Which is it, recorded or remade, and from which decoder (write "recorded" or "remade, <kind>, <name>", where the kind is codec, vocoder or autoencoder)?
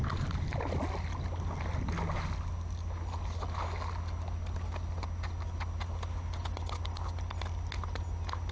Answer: recorded